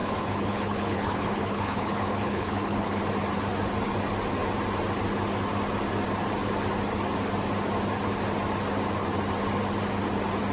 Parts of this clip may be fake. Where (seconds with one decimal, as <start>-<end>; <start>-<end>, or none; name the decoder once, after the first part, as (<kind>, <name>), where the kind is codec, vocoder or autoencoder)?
0.0-3.0 (codec, HILCodec)